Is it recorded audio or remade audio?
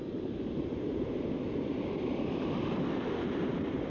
recorded